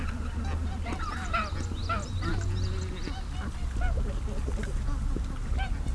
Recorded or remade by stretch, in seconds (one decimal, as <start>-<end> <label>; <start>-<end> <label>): 0.0-5.9 recorded

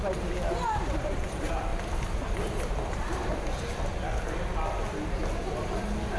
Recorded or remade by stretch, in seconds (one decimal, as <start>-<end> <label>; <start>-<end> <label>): 0.0-1.7 remade; 1.7-2.8 recorded; 2.8-3.9 remade; 3.9-4.7 recorded; 4.7-6.2 remade

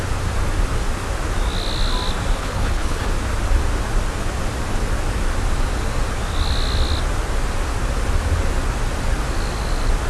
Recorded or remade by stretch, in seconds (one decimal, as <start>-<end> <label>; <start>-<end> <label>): 0.0-2.4 recorded; 2.4-3.1 remade; 3.1-10.1 recorded

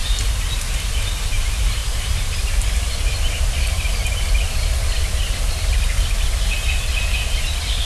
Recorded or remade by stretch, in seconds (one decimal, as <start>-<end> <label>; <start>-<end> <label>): 0.0-1.8 recorded; 1.8-3.7 remade; 3.7-7.8 recorded

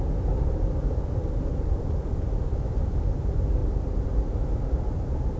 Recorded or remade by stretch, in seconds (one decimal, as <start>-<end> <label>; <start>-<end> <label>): 0.0-5.4 recorded

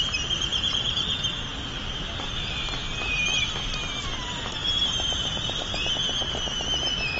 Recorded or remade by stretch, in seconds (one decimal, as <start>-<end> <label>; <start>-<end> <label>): 0.0-4.6 recorded; 4.6-5.9 remade; 5.9-7.2 recorded